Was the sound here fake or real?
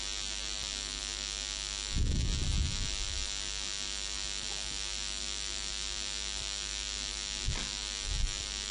real